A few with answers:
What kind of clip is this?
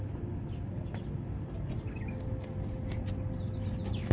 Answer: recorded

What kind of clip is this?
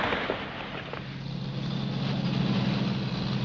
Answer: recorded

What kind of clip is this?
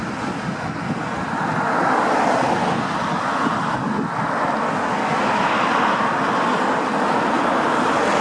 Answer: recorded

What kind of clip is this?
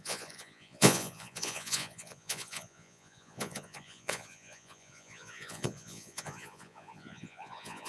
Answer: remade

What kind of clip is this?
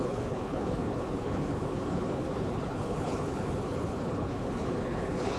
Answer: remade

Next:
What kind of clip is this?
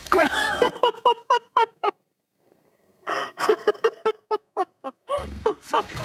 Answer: remade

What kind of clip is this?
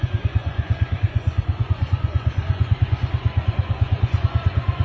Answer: remade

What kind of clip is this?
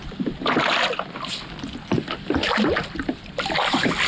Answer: recorded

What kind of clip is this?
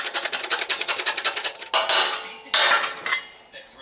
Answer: recorded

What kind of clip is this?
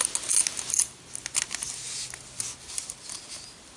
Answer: recorded